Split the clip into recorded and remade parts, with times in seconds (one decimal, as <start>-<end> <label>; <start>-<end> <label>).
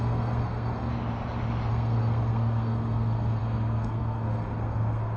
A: 0.0-0.9 remade; 0.9-1.7 recorded; 1.7-5.2 remade